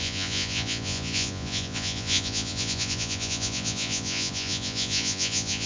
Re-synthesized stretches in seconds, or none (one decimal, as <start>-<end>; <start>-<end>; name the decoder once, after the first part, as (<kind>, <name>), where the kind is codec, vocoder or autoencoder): 0.0-5.7 (vocoder, Vocos)